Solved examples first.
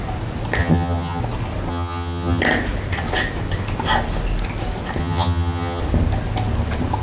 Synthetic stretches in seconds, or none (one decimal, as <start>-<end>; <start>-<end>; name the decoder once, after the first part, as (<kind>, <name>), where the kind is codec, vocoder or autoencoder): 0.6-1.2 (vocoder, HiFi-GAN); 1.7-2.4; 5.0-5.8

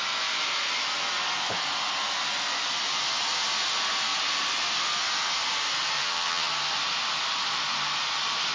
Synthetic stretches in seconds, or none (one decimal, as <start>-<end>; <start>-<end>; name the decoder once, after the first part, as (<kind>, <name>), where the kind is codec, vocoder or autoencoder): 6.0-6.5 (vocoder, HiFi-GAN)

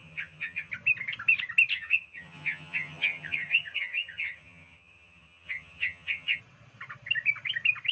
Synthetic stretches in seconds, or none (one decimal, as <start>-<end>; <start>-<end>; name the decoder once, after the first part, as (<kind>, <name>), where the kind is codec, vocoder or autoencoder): 0.0-0.7 (vocoder, HiFi-GAN); 1.7-6.4

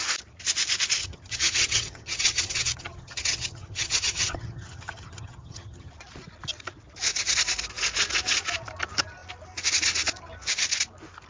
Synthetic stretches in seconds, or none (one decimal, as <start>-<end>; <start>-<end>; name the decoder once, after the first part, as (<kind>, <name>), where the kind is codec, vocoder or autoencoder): 1.0-5.9 (vocoder, HiFi-GAN)

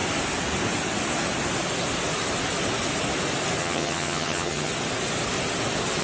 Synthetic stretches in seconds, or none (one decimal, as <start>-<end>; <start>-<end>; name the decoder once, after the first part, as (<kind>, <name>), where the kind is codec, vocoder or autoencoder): 3.6-4.7 (vocoder, HiFi-GAN)

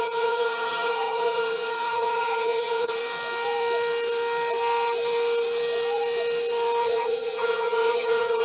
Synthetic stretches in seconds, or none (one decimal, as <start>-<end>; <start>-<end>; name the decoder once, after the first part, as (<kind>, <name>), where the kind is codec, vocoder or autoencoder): 0.0-3.0 (vocoder, HiFi-GAN); 6.8-8.4

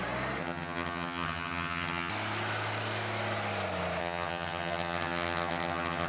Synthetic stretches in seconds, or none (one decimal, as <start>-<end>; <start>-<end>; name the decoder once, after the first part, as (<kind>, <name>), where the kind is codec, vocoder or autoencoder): 0.4-2.1 (vocoder, HiFi-GAN); 4.0-6.1